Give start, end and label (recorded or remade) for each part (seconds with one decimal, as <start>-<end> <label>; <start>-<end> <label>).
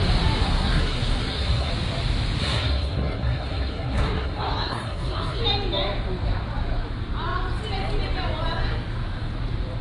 0.0-0.4 recorded; 0.4-1.7 remade; 1.7-2.4 recorded; 2.4-5.4 remade; 5.4-9.8 recorded